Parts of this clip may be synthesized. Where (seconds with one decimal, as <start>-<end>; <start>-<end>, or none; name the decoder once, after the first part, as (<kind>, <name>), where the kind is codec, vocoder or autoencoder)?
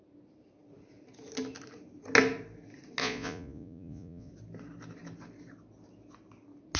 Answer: 3.0-4.3 (vocoder, Vocos)